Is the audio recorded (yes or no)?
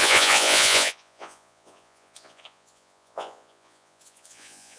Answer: no